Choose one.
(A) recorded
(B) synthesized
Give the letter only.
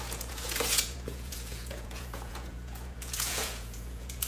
B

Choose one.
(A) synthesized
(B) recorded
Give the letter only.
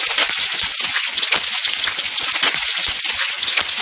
A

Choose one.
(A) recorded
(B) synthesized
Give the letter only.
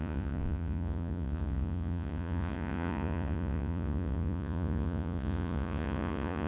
B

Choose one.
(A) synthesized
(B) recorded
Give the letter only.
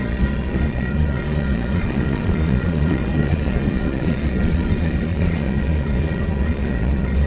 A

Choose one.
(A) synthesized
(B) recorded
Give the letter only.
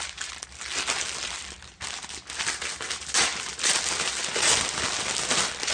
B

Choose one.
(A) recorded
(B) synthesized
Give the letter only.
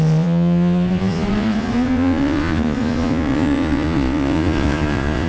B